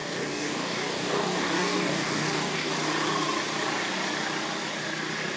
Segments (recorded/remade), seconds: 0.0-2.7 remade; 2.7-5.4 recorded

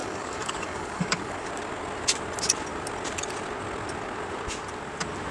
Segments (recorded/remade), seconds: 0.0-1.5 remade; 1.5-5.3 recorded

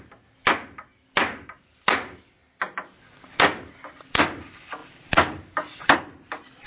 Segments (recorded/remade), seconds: 0.0-6.7 recorded